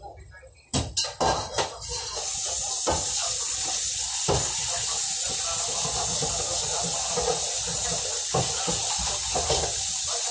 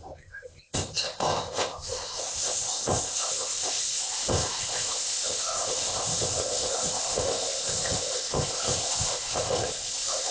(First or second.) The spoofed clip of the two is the second